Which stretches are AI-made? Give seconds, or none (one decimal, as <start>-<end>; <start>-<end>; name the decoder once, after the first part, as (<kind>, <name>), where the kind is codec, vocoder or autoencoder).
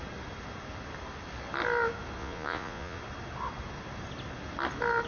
2.2-3.0 (vocoder, Vocos)